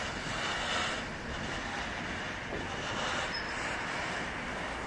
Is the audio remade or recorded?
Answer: recorded